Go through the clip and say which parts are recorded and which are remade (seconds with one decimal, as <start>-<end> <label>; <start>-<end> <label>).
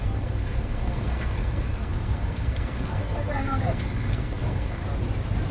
0.0-4.8 remade; 4.8-5.5 recorded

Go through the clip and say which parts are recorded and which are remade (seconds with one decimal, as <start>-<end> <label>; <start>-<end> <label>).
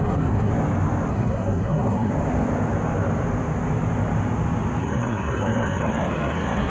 0.0-0.5 remade; 0.5-1.1 recorded; 1.1-2.1 remade; 2.1-4.8 recorded; 4.8-6.7 remade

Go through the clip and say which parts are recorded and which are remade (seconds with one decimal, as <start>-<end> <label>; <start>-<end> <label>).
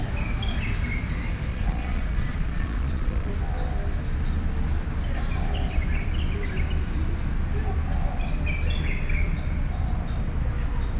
0.0-1.5 recorded; 1.5-3.3 remade; 3.3-11.0 recorded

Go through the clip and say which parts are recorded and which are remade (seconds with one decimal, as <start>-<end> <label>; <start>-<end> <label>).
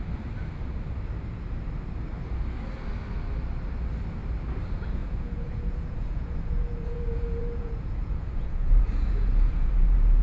0.0-5.0 recorded; 5.0-10.2 remade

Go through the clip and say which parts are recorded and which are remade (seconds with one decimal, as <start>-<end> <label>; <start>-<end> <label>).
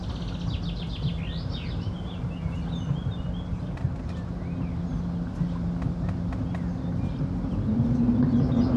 0.0-8.8 recorded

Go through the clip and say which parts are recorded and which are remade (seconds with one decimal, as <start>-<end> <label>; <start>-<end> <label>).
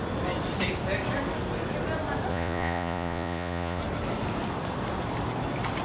0.0-2.3 recorded; 2.3-3.8 remade; 3.8-5.8 recorded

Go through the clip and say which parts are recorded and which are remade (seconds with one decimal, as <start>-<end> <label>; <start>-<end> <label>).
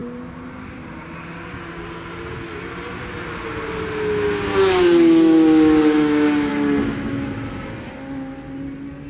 0.0-4.5 recorded; 4.5-6.5 remade; 6.5-9.1 recorded